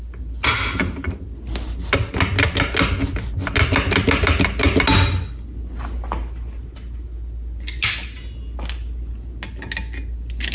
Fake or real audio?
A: real